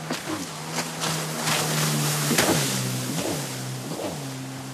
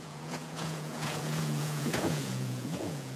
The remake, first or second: second